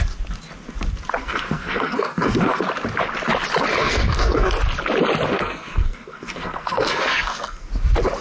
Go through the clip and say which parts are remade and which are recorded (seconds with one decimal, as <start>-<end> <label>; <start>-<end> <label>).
0.0-1.2 recorded; 1.2-2.6 remade; 2.6-3.8 recorded; 3.8-4.5 remade; 4.5-5.3 recorded; 5.3-7.7 remade; 7.7-8.2 recorded